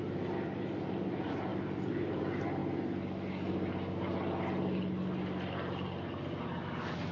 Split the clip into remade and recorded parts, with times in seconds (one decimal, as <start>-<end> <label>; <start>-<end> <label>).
0.0-1.5 recorded; 1.5-2.2 remade; 2.2-7.1 recorded